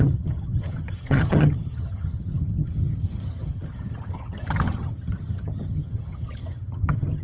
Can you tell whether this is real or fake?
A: fake